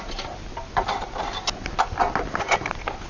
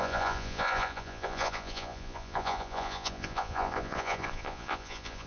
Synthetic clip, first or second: second